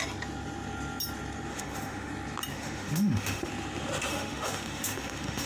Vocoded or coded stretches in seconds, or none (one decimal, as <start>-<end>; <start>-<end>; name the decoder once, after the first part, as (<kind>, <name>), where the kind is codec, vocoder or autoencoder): 1.5-2.1 (autoencoder, DAC-VAE); 2.5-3.5; 4.1-5.5